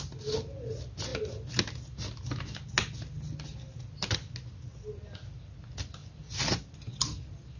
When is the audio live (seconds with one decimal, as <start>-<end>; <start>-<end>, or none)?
0.0-7.6